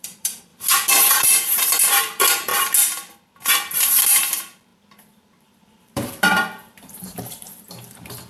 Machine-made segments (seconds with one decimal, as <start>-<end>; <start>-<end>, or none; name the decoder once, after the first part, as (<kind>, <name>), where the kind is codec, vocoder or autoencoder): 0.0-0.5 (vocoder, BigVGAN v2); 1.1-2.5; 3.9-8.3